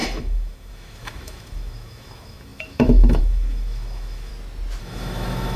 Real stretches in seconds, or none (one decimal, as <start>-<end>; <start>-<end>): 4.3-4.8